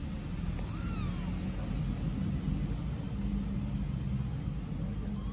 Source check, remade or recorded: recorded